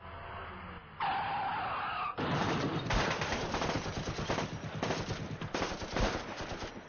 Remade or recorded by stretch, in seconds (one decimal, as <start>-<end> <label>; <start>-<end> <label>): 0.0-6.9 recorded